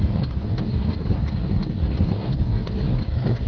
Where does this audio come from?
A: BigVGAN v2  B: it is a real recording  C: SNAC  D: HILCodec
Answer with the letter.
C